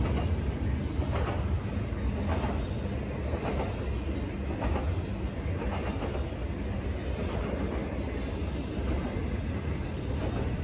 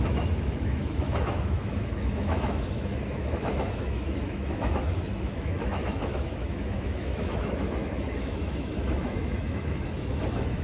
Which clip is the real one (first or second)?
first